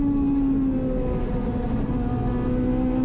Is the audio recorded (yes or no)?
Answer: yes